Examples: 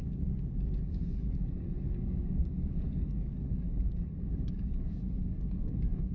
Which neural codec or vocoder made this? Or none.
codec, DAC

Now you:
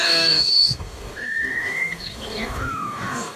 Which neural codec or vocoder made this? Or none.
codec, DAC